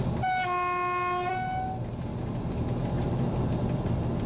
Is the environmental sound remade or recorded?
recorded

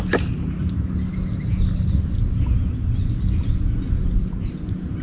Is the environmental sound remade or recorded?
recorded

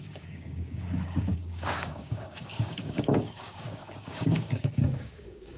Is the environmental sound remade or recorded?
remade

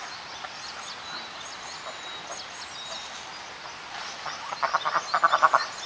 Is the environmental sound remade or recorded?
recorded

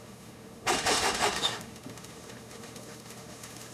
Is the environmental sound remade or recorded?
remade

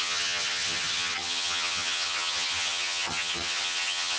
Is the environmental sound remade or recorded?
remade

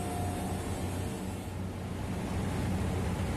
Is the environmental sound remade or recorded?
recorded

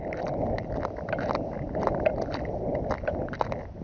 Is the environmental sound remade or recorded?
recorded